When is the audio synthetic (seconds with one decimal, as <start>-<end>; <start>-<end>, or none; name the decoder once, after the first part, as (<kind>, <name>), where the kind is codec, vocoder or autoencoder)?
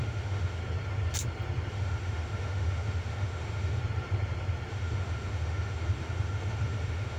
0.0-0.6 (autoencoder, DAC-VAE); 1.7-3.8; 4.7-7.2